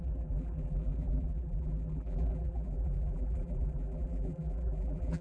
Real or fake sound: fake